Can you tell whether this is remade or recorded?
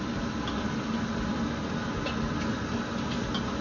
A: recorded